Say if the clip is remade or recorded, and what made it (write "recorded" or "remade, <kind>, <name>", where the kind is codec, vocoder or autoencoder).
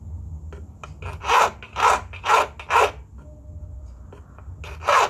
recorded